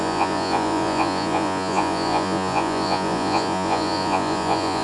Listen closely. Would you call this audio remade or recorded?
remade